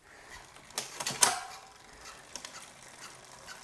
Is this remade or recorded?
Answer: recorded